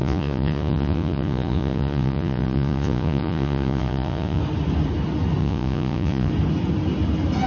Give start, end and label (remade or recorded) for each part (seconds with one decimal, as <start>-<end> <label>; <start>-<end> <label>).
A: 0.0-4.4 remade; 4.4-5.4 recorded; 5.4-6.3 remade; 6.3-7.5 recorded